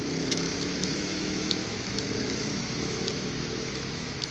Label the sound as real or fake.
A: fake